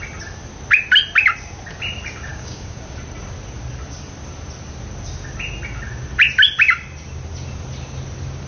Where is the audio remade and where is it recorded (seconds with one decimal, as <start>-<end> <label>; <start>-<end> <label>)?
0.0-2.3 recorded; 2.3-2.8 remade; 2.8-8.5 recorded